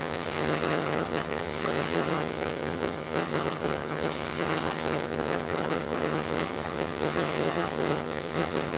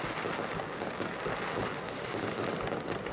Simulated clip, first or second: first